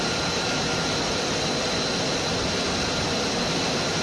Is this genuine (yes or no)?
yes